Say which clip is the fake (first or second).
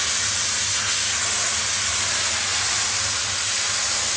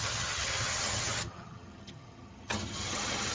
second